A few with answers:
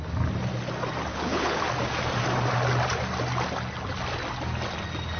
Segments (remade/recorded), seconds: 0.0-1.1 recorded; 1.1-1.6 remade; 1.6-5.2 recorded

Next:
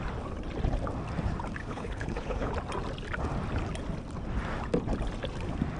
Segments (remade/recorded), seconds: 0.0-1.6 recorded; 1.6-2.5 remade; 2.5-5.8 recorded

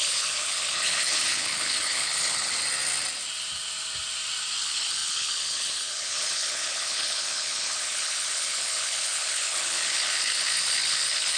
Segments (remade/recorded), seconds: 0.0-2.5 remade; 2.5-4.6 recorded; 4.6-11.4 remade

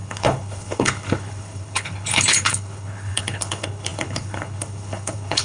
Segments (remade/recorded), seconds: 0.0-5.4 remade